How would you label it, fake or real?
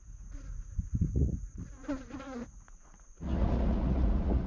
fake